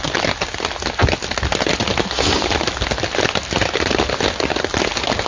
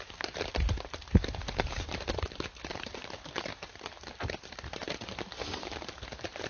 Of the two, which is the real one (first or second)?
first